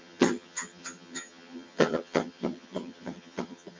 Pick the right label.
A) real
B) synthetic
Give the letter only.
B